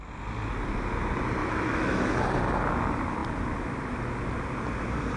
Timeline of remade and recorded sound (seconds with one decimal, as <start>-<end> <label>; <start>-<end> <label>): 0.0-1.4 recorded; 1.4-2.2 remade; 2.2-5.2 recorded